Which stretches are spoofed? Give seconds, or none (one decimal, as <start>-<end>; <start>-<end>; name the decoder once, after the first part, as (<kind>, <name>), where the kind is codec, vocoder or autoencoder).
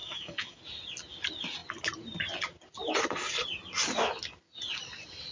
0.0-0.6 (autoencoder, DAC-VAE)